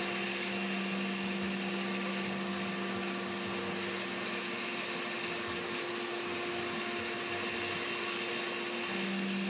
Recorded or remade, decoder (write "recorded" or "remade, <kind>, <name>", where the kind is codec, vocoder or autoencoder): recorded